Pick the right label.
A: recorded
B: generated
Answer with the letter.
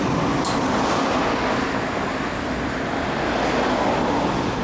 A